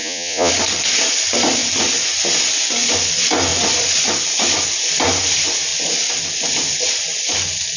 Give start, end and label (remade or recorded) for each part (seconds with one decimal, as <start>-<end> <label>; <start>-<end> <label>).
0.0-0.5 remade; 0.5-7.8 recorded